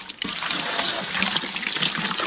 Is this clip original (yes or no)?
yes